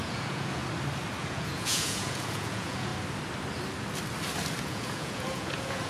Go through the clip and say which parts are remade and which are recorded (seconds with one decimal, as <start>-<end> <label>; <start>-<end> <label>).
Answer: 0.0-0.6 remade; 0.6-1.2 recorded; 1.2-2.9 remade; 2.9-4.6 recorded; 4.6-5.9 remade